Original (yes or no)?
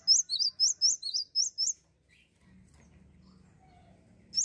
yes